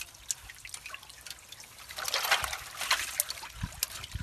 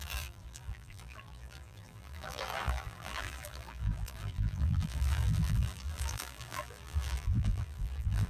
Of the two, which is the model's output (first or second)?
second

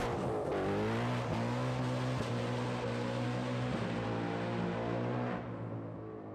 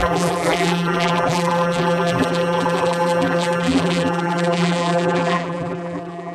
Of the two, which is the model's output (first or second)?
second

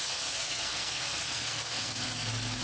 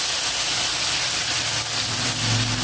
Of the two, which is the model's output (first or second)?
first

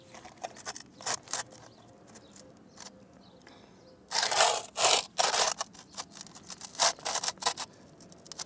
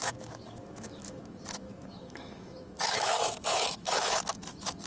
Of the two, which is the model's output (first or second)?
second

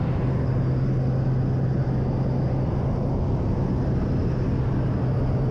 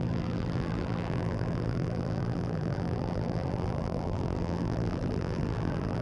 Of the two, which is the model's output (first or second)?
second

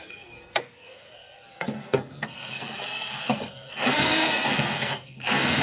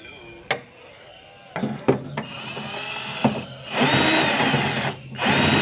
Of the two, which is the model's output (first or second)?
first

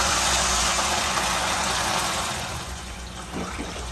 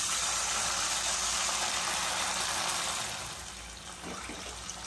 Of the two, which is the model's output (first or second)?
first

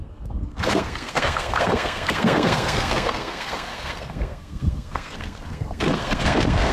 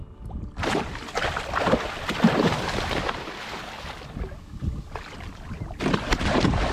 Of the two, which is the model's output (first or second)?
first